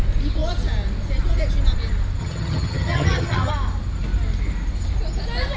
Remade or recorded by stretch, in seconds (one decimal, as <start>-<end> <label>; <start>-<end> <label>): 0.0-2.2 recorded; 2.2-3.5 remade; 3.5-5.6 recorded